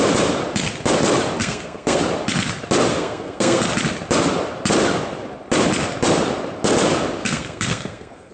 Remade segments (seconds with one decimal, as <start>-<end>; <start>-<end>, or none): 1.4-2.0; 2.9-3.6; 7.2-8.3